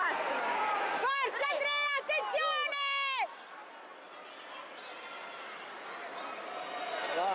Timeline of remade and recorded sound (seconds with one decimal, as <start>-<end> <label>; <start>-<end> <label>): 0.0-7.3 recorded